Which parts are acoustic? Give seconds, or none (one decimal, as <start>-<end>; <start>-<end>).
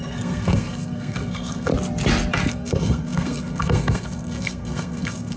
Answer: 1.7-2.5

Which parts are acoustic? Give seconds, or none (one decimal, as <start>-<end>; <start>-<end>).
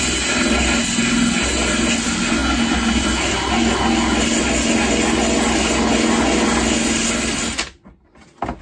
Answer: 0.0-8.6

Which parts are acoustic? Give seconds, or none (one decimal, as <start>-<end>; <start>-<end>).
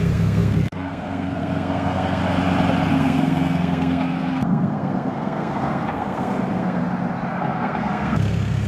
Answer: 2.2-2.9; 6.8-7.3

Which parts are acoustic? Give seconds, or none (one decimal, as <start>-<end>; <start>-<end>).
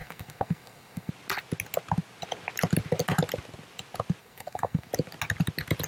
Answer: 1.1-4.2; 4.9-5.9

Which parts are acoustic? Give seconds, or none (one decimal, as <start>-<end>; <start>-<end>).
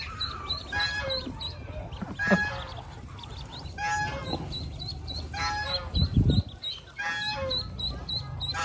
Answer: 0.0-8.6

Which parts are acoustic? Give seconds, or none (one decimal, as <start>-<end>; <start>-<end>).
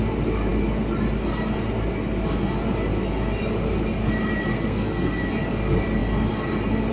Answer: 0.0-4.5; 5.2-6.9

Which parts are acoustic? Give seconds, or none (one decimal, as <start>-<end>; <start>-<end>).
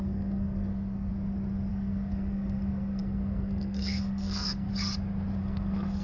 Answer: 1.1-1.7; 4.7-5.4